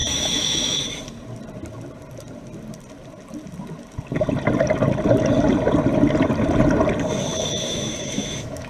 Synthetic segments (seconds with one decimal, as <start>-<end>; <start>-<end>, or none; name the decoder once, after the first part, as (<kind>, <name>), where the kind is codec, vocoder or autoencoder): 0.0-0.9 (autoencoder, DAC-VAE); 7.3-8.7